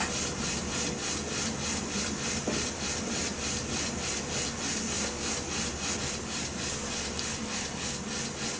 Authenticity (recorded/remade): recorded